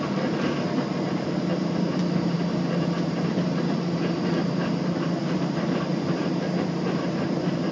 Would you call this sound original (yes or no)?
no